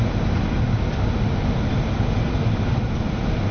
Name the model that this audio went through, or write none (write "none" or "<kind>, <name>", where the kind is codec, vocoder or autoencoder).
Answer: none